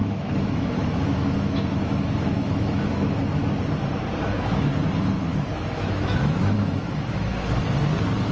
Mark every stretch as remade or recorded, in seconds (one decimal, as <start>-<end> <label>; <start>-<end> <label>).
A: 0.0-3.2 remade; 3.2-4.0 recorded; 4.0-4.7 remade; 4.7-5.3 recorded; 5.3-7.6 remade; 7.6-8.3 recorded